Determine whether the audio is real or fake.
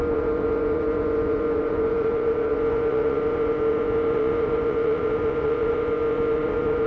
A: fake